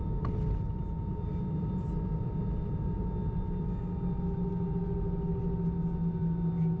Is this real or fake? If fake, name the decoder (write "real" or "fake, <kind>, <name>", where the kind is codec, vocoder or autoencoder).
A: real